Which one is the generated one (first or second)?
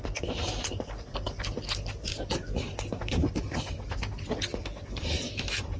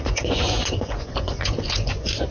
second